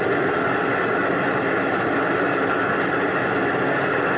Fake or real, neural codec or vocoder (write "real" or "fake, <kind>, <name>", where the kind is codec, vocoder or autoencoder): real